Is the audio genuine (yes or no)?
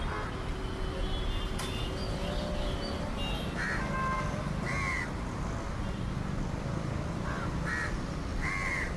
yes